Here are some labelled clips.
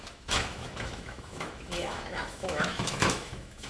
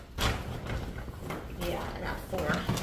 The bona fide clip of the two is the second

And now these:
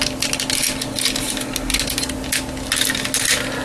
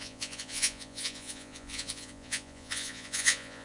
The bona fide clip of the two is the first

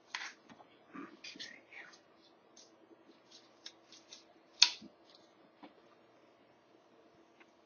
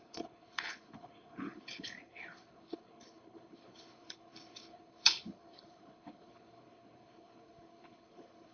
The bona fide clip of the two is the first